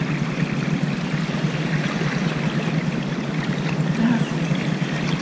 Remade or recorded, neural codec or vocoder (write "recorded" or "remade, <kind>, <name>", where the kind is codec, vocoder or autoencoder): recorded